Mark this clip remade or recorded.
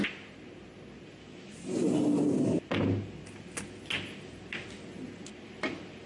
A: recorded